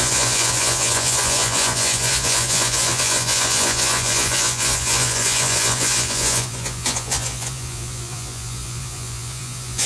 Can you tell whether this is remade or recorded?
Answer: remade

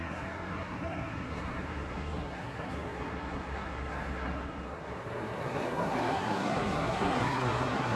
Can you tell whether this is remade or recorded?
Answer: remade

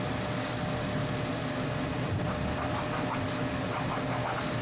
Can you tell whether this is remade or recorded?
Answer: recorded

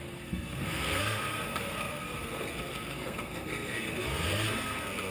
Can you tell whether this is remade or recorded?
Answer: remade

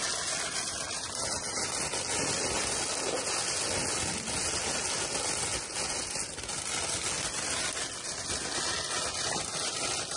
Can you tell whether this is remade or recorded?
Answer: recorded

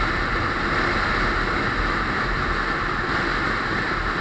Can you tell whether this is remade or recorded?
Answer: recorded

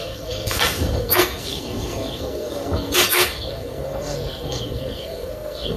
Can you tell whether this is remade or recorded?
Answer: remade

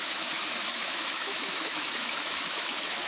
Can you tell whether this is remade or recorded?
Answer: remade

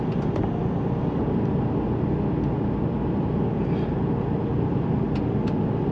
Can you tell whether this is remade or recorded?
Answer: recorded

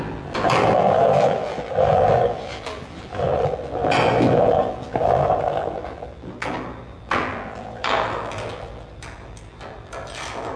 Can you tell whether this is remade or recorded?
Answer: remade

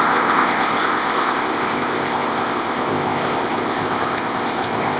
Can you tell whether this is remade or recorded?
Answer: remade